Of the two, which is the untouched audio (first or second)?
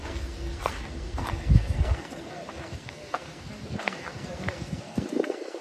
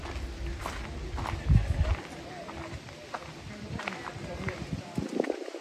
second